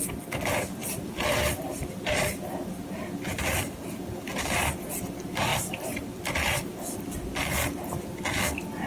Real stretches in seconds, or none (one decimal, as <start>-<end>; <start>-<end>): 0.0-0.8; 2.5-8.9

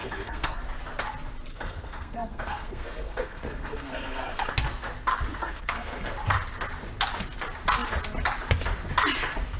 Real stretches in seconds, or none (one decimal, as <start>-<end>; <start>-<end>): 0.6-1.5; 4.5-5.4; 6.1-9.6

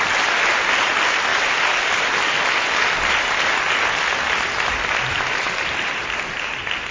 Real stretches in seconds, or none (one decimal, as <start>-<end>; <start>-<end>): 0.0-6.9

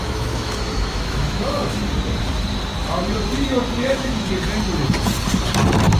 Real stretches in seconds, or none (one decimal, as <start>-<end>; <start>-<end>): 1.8-3.8; 4.3-6.0

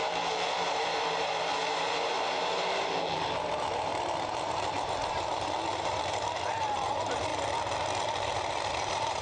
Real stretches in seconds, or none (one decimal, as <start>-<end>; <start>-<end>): 3.9-4.5; 7.3-8.7

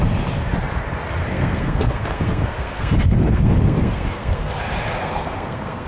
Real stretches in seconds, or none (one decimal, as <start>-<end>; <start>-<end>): 0.0-1.2; 4.5-5.0

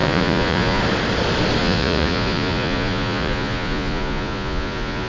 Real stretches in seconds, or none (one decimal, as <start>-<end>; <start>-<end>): 0.8-1.6

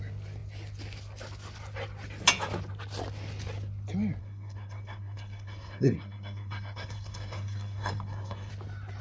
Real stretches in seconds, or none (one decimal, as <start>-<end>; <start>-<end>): 0.0-4.2; 8.5-9.0